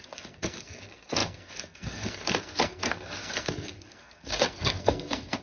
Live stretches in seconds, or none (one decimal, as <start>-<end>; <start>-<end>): none